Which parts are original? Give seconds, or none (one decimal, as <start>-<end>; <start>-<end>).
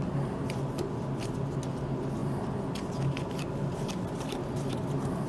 0.0-5.3